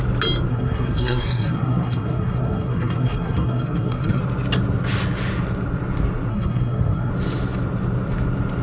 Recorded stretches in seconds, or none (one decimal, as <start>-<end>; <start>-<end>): 0.0-0.5; 4.2-6.3; 7.1-8.6